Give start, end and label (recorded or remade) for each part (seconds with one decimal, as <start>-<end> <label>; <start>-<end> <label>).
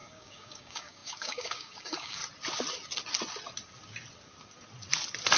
0.0-2.2 remade; 2.2-5.4 recorded